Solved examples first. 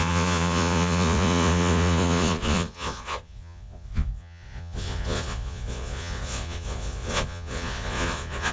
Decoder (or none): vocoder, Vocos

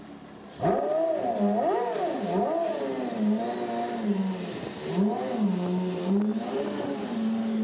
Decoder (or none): none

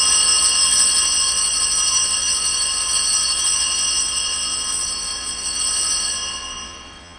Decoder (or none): vocoder, Vocos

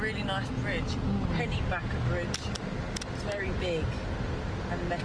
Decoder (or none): none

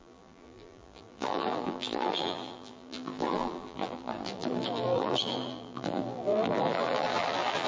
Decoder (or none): vocoder, BigVGAN v2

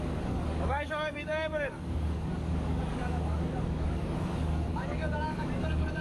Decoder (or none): codec, DAC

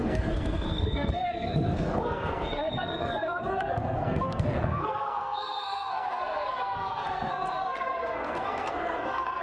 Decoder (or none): codec, SNAC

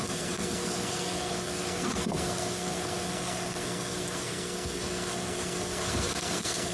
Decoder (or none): codec, SNAC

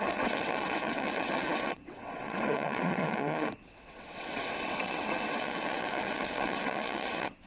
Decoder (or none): vocoder, WaveNeXt